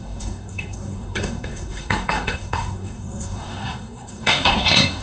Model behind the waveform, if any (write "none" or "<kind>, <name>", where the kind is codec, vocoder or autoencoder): codec, SNAC